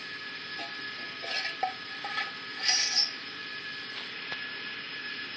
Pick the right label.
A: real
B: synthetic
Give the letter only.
B